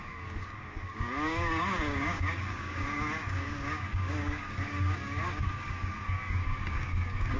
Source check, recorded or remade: remade